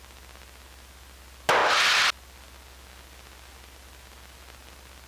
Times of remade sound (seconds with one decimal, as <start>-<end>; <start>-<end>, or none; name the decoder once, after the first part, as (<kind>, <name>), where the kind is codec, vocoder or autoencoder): none